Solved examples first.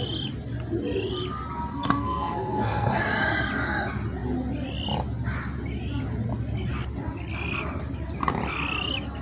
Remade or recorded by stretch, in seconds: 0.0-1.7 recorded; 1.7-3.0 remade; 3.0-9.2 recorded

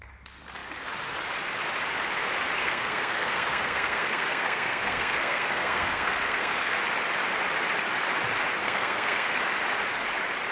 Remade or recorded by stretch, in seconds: 0.0-2.6 recorded; 2.6-6.8 remade; 6.8-8.6 recorded; 8.6-9.4 remade; 9.4-10.5 recorded

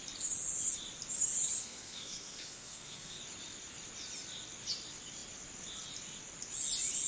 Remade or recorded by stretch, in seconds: 0.0-1.6 recorded; 1.6-3.2 remade; 3.2-7.1 recorded

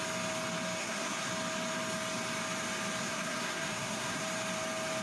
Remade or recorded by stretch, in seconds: 0.0-0.8 recorded; 0.8-1.3 remade; 1.3-3.0 recorded; 3.0-4.2 remade; 4.2-5.0 recorded

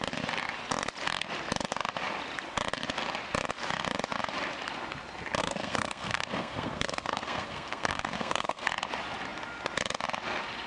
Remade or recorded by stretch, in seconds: 0.0-5.4 recorded; 5.4-8.7 remade; 8.7-10.7 recorded

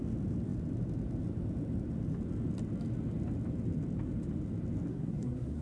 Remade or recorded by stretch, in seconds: 0.0-4.9 recorded; 4.9-5.6 remade

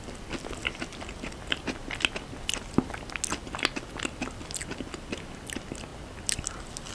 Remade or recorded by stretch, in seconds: 0.0-6.9 recorded